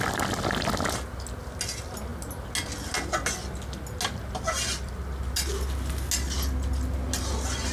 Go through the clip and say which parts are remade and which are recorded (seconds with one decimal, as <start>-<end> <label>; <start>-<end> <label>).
0.0-7.7 recorded